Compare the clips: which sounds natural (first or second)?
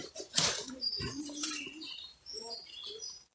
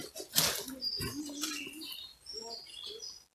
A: second